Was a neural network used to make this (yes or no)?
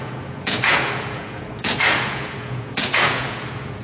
yes